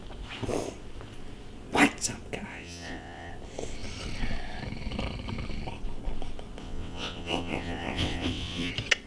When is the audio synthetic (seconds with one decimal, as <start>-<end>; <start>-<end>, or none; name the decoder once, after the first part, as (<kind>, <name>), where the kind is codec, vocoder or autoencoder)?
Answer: 2.5-3.3 (vocoder, WaveNeXt); 6.6-8.7